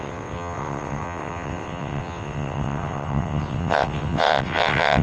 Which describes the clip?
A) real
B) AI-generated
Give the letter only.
B